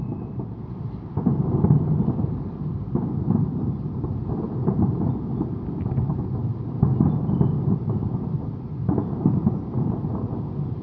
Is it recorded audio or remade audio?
recorded